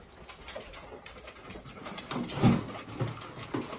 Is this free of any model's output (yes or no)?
yes